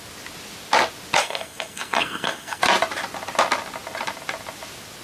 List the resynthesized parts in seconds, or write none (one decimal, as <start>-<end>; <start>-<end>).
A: 1.2-2.6

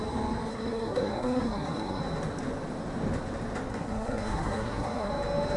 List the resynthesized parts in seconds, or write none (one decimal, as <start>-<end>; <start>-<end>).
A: 0.5-2.0; 3.7-5.1

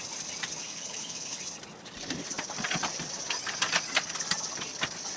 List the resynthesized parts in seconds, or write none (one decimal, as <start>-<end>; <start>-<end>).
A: 0.6-1.4

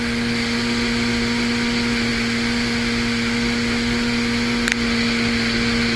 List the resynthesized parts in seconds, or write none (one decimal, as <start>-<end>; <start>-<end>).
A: none

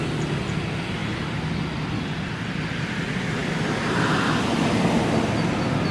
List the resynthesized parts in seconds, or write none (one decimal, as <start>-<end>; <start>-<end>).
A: none